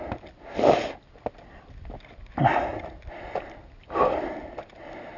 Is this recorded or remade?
recorded